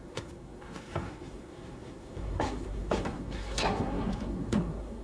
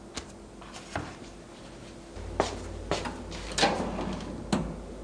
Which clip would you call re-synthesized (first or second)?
first